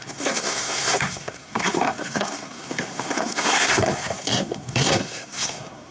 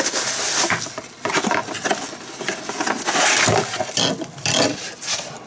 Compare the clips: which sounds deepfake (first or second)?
first